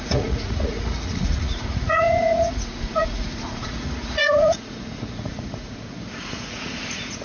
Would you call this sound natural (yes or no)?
no